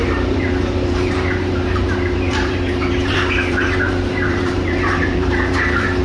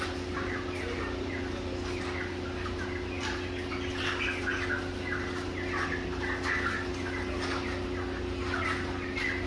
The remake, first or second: first